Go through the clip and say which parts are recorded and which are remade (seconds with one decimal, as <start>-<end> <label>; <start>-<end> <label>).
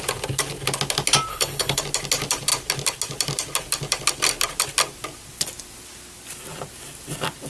0.0-1.3 recorded; 1.3-1.8 remade; 1.8-7.5 recorded